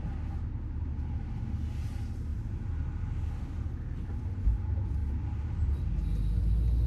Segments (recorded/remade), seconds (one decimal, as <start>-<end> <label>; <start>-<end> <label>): 0.0-6.9 recorded